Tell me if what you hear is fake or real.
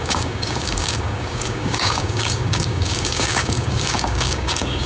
fake